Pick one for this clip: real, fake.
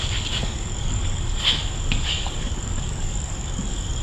fake